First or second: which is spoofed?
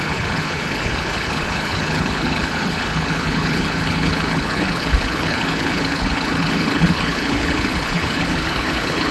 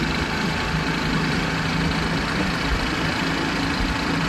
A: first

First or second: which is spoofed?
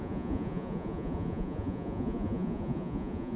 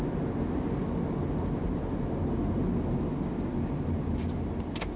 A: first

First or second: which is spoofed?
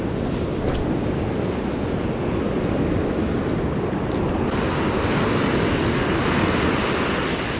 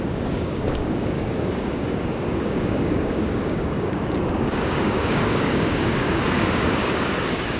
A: second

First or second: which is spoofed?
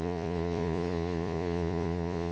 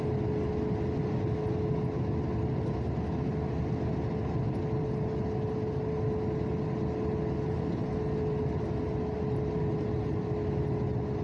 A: first